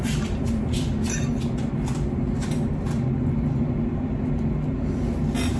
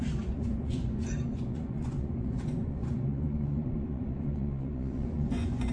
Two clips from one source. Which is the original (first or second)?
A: first